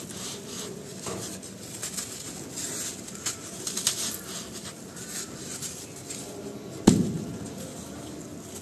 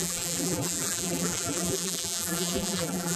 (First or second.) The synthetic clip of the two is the second